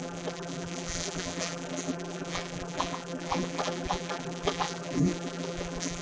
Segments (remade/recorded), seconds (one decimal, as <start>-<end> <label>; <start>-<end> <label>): 0.0-6.0 remade

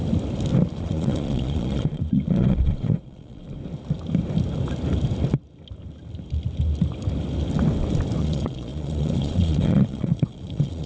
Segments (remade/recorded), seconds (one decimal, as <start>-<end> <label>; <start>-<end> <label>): 0.0-0.7 recorded; 0.7-3.4 remade; 3.4-8.2 recorded; 8.2-10.9 remade